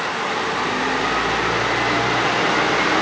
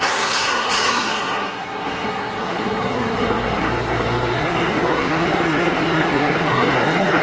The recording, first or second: first